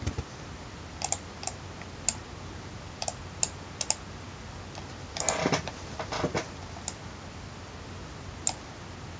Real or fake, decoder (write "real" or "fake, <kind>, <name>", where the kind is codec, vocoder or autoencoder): real